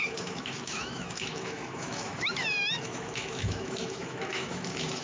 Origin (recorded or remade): remade